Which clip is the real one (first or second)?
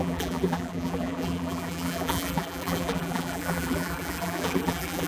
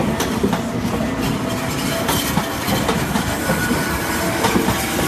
second